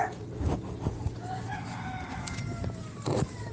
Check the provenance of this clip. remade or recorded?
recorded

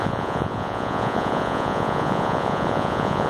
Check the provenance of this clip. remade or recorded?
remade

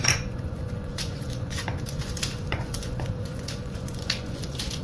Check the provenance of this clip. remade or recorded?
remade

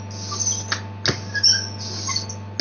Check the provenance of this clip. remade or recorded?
recorded